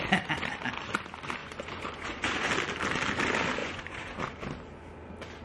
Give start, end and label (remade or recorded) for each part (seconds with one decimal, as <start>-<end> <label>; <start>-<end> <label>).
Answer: 0.0-1.4 recorded; 1.4-2.5 remade; 2.5-3.6 recorded; 3.6-4.3 remade; 4.3-5.4 recorded